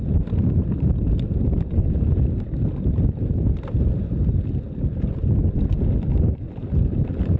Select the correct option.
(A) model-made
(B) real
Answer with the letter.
B